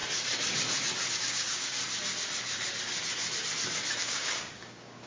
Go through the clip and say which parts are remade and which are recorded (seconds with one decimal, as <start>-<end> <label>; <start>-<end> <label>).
0.0-1.1 recorded; 1.1-1.8 remade; 1.8-4.0 recorded; 4.0-5.1 remade